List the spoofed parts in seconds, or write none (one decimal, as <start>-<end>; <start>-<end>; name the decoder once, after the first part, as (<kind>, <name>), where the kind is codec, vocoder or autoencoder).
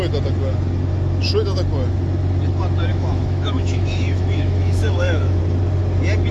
2.9-5.4 (autoencoder, DAC-VAE)